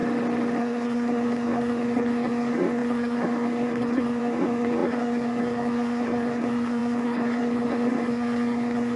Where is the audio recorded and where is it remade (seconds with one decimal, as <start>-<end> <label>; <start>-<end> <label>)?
0.0-0.6 recorded; 0.6-9.0 remade